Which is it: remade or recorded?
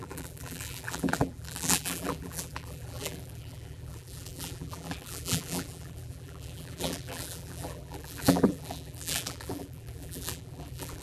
remade